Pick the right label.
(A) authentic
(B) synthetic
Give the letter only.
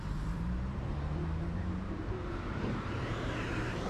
B